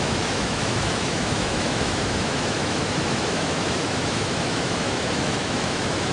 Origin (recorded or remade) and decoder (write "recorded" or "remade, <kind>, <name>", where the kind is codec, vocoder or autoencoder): remade, autoencoder, DAC-VAE